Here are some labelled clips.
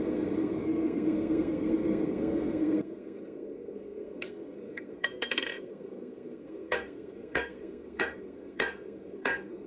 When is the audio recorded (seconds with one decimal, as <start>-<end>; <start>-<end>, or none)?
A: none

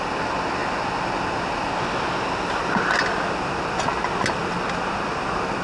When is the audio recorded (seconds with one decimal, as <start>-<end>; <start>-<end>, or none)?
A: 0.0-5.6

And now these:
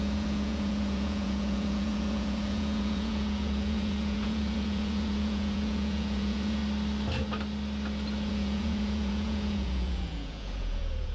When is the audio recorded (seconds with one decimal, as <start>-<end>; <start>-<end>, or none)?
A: 6.6-8.3

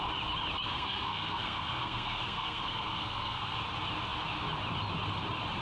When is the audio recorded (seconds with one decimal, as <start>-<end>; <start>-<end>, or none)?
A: 0.0-0.6; 3.6-5.6

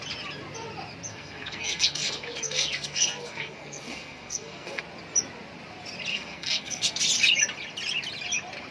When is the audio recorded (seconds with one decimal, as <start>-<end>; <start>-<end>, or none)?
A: 0.0-1.1; 4.8-6.1; 7.0-8.7

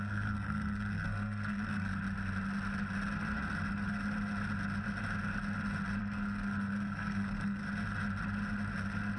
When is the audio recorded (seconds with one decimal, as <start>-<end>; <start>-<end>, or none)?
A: 1.9-6.0; 7.6-9.2

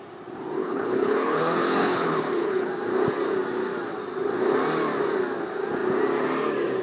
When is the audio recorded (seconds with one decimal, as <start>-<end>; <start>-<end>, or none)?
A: 0.0-0.6; 2.7-6.8

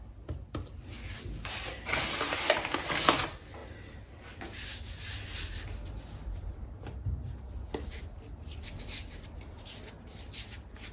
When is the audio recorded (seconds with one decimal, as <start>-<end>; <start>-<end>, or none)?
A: 0.0-10.9